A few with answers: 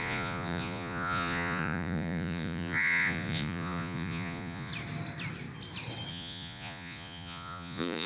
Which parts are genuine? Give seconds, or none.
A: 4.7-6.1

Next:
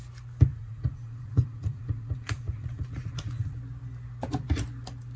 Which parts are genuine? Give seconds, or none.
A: 0.0-0.5; 3.6-5.2

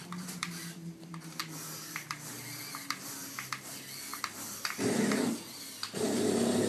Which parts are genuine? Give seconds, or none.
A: 0.0-6.7